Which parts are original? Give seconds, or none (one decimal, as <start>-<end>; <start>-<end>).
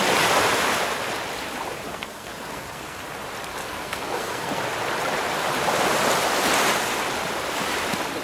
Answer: 0.0-1.9; 3.0-3.6; 4.6-8.2